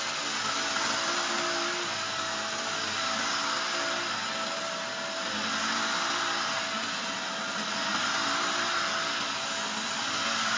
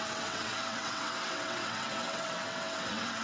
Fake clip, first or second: second